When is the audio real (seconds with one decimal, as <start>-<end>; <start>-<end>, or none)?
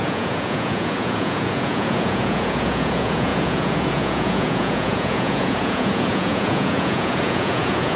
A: none